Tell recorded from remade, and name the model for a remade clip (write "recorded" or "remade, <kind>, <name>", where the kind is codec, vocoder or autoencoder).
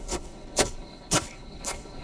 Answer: remade, codec, HILCodec